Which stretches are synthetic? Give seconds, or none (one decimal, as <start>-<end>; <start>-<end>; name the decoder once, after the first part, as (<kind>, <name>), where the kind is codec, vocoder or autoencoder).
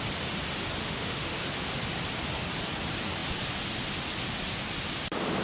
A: 0.8-1.4 (autoencoder, DAC-VAE)